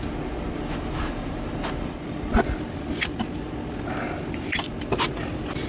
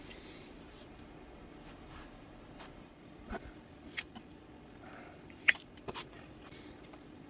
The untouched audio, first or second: first